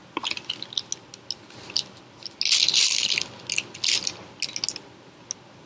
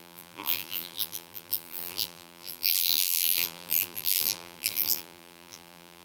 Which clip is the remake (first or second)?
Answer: second